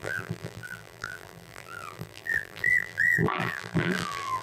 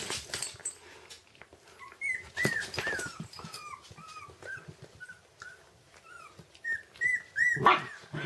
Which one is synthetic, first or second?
first